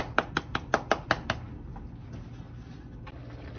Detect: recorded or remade recorded